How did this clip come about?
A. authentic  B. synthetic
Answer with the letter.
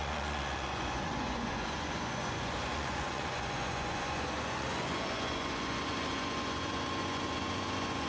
B